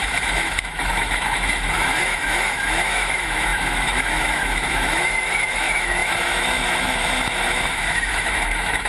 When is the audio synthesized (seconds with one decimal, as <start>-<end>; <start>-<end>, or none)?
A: 0.0-8.9